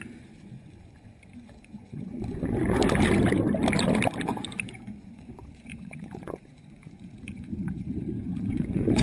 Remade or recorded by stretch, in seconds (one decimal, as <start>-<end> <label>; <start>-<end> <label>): 0.0-2.8 remade; 2.8-4.2 recorded; 4.2-9.0 remade